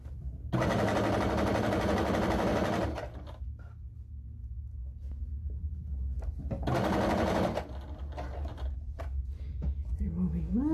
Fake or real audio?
real